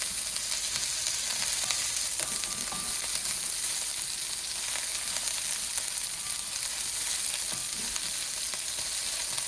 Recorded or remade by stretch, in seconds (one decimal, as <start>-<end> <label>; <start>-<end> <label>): 0.0-9.5 recorded